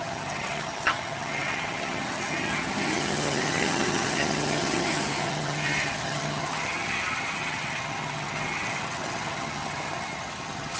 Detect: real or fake fake